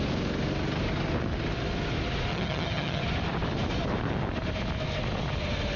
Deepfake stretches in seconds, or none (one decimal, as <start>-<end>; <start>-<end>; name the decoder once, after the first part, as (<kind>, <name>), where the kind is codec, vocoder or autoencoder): 2.3-3.0 (vocoder, HiFi-GAN)